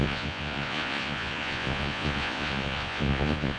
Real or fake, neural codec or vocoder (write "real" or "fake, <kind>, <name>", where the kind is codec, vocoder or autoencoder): fake, vocoder, Vocos